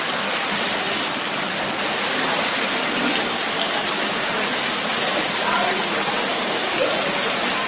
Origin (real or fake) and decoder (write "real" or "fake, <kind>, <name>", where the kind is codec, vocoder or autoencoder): real